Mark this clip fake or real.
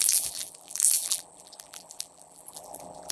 fake